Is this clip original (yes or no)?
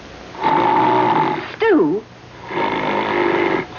yes